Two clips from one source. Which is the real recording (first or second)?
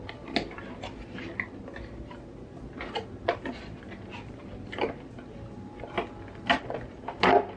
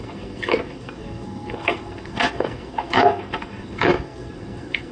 first